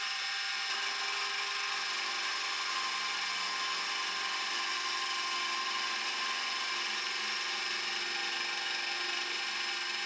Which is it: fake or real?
real